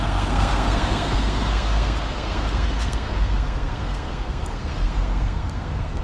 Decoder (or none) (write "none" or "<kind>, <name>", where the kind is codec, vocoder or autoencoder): codec, SNAC